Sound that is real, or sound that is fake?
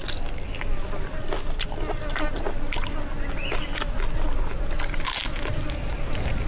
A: real